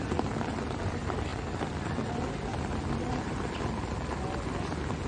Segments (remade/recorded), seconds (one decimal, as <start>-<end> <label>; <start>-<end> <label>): 0.0-5.1 recorded